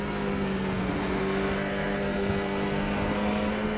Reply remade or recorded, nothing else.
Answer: remade